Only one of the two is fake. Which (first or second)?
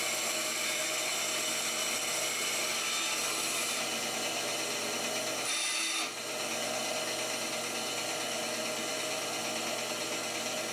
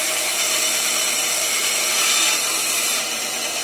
second